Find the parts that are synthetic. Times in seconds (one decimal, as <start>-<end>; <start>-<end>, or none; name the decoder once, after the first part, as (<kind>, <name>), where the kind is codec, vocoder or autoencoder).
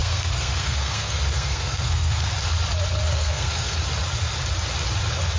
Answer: 0.0-2.3 (codec, SNAC); 3.1-3.8